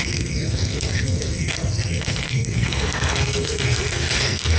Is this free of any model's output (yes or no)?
no